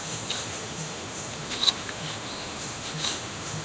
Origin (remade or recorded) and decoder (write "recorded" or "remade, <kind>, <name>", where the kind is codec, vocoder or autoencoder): remade, autoencoder, DAC-VAE